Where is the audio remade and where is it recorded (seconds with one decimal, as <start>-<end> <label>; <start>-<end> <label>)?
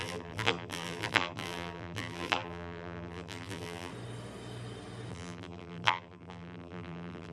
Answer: 0.0-3.9 remade; 3.9-5.1 recorded; 5.1-7.3 remade